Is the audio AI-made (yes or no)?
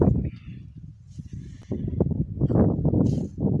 no